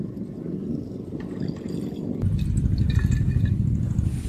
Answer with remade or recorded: recorded